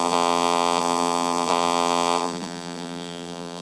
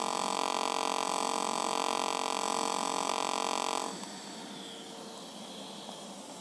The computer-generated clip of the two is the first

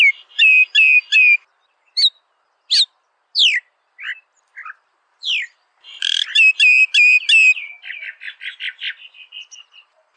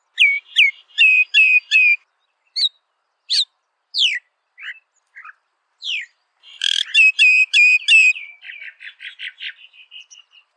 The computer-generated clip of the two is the second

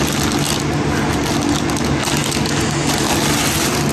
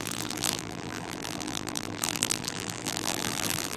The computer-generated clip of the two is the second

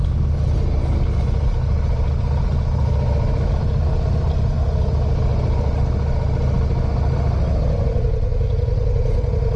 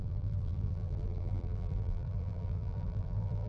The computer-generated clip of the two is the second